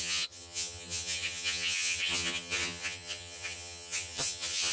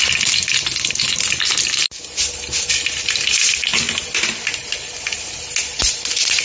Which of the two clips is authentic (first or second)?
second